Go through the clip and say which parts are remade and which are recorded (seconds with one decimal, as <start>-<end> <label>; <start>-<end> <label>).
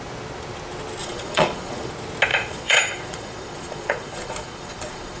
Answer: 0.0-1.0 recorded; 1.0-1.9 remade; 1.9-2.3 recorded; 2.3-5.2 remade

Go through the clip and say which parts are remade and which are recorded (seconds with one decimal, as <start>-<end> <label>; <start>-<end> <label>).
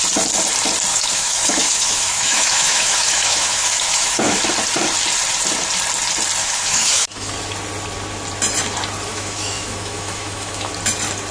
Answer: 0.0-0.9 recorded; 0.9-4.4 remade; 4.4-6.4 recorded; 6.4-7.3 remade; 7.3-9.1 recorded; 9.1-10.7 remade; 10.7-11.3 recorded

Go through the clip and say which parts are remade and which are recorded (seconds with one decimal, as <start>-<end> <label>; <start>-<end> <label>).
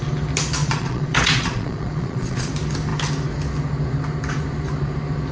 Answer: 0.0-0.6 recorded; 0.6-2.5 remade; 2.5-5.3 recorded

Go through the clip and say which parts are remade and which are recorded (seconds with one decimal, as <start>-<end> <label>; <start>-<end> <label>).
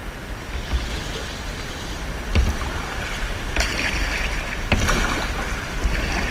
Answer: 0.0-0.9 recorded; 0.9-6.3 remade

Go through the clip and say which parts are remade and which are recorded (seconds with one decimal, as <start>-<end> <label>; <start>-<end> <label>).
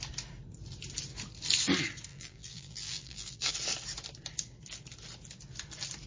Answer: 0.0-2.1 recorded; 2.1-3.5 remade; 3.5-6.1 recorded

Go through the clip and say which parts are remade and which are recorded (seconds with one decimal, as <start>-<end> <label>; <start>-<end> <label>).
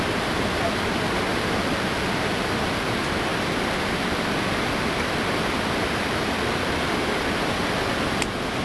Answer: 0.0-8.6 recorded